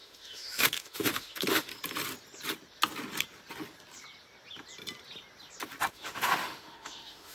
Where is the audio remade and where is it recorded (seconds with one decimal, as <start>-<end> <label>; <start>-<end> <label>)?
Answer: 0.0-1.7 remade; 1.7-5.9 recorded; 5.9-7.3 remade